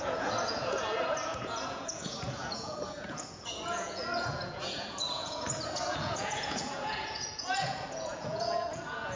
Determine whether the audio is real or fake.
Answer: fake